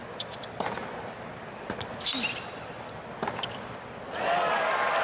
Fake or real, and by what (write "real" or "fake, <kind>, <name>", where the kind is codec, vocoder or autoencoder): real